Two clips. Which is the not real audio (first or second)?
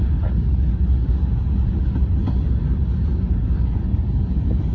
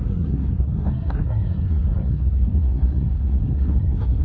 second